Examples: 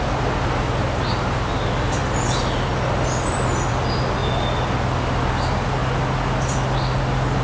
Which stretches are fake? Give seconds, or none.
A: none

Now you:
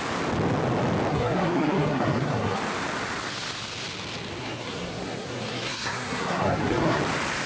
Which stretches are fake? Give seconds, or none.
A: 1.1-2.6 (codec, SNAC); 4.4-7.0

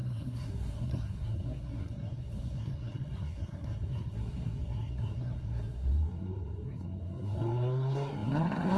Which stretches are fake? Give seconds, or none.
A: 0.0-8.8 (codec, SNAC)

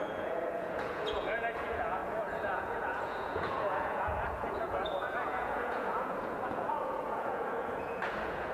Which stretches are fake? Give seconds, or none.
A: 0.0-8.5 (vocoder, Vocos)